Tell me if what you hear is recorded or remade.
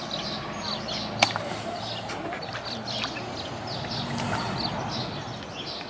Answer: recorded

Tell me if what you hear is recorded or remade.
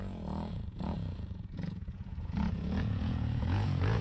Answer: remade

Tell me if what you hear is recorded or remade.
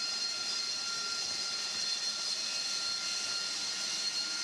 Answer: recorded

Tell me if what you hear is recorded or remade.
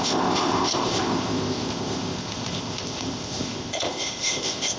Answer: remade